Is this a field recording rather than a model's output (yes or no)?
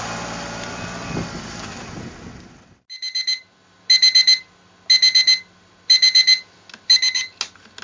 yes